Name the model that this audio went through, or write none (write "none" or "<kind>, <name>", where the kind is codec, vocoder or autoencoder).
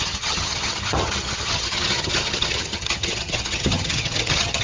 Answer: vocoder, HiFi-GAN